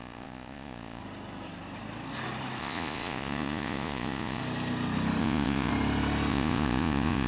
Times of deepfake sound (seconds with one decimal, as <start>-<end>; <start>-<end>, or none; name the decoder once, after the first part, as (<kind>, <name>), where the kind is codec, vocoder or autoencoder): 0.0-1.0 (vocoder, Vocos); 2.6-4.4; 5.2-5.7; 6.3-7.3